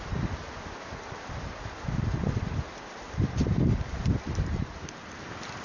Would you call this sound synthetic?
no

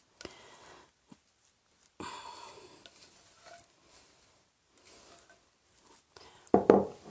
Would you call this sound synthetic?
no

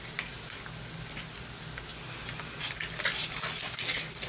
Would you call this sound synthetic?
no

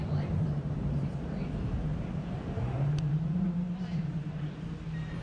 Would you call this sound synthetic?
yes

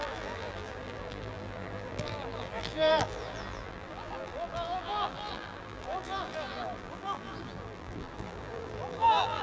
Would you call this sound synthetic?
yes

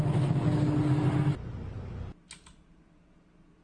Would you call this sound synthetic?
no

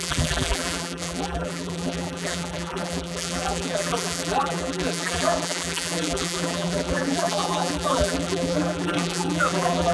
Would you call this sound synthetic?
yes